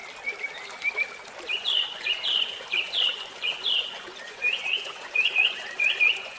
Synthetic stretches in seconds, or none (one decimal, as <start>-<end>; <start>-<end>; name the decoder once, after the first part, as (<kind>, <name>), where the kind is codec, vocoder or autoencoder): 1.6-6.4 (vocoder, Vocos)